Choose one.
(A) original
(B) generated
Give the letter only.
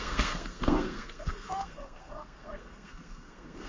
B